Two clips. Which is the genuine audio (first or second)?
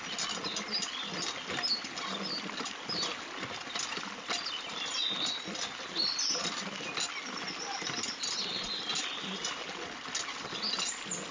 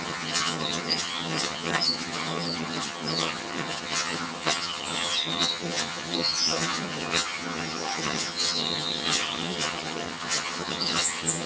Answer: first